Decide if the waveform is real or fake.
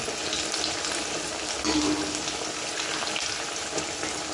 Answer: real